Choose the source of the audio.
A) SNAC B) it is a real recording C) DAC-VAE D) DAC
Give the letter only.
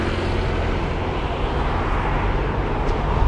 B